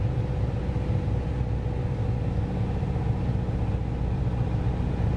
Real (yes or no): yes